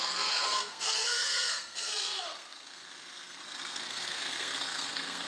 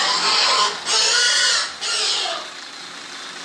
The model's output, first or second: first